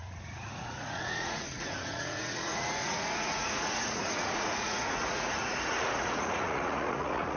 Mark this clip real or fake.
fake